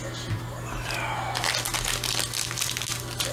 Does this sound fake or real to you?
real